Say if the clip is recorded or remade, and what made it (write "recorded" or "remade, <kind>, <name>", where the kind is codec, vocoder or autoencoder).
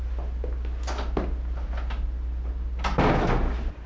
recorded